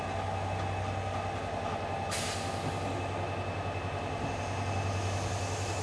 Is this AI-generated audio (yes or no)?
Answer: no